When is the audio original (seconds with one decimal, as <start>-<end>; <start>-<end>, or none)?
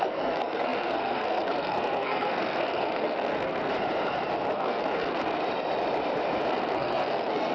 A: 3.7-4.5; 5.4-6.5